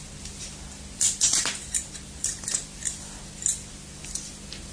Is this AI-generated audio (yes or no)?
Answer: no